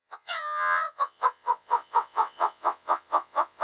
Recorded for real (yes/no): no